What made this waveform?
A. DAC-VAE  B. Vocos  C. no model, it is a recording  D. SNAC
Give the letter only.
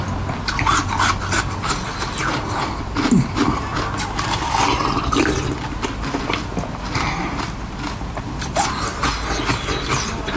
C